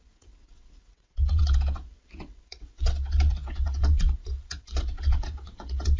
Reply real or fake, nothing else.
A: fake